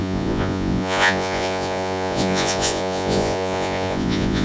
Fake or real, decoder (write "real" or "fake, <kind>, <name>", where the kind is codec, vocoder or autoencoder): fake, vocoder, Vocos